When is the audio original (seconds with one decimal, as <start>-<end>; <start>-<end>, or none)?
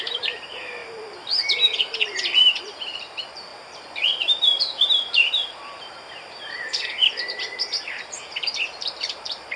none